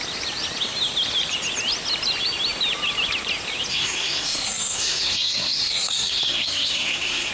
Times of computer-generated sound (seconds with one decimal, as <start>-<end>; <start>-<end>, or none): 3.7-7.3